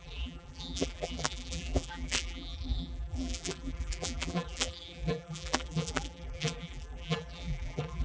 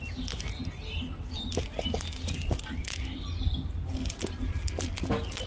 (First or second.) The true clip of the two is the second